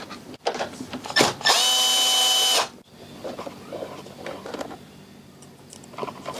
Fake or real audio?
real